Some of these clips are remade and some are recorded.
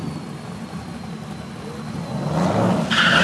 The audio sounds recorded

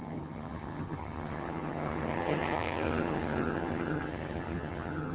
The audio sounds remade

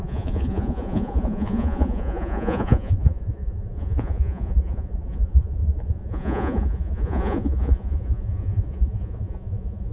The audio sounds remade